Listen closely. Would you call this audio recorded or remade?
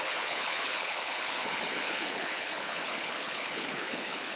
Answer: remade